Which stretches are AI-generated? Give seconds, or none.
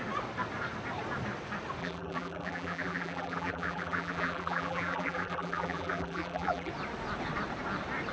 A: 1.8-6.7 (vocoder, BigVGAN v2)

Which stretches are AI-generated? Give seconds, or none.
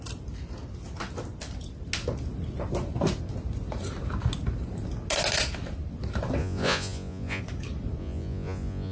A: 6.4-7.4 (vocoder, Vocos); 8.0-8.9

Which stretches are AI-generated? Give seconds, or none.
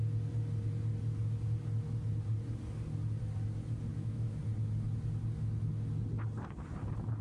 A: 3.9-4.4 (autoencoder, DAC-VAE)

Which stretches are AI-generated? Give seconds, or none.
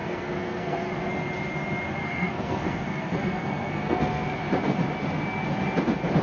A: 0.0-1.0 (codec, SNAC); 2.0-4.4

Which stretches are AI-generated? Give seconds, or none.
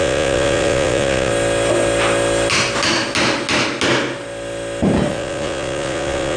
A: 0.0-1.3 (vocoder, Vocos); 5.1-6.4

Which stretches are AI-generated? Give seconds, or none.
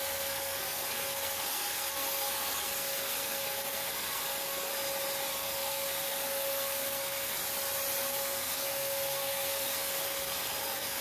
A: 0.0-4.7 (codec, SNAC); 5.3-7.4; 8.0-11.0